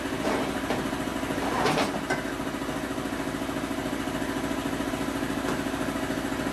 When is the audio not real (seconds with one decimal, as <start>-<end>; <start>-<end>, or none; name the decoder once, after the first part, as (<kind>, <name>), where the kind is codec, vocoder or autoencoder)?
none